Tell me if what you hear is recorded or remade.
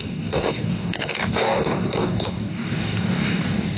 remade